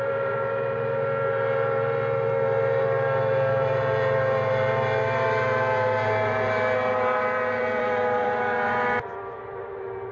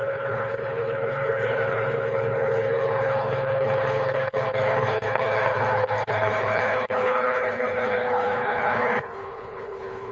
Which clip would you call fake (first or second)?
second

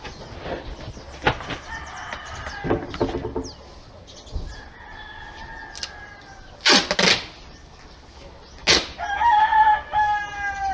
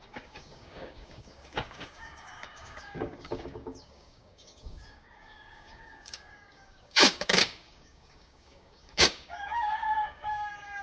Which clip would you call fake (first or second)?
second